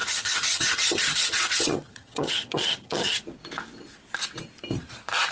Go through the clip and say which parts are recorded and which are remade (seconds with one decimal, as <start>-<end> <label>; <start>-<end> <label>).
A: 0.0-3.2 remade; 3.2-5.3 recorded